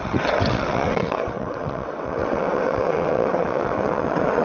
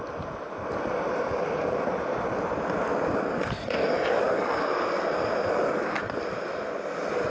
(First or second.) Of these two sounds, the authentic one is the second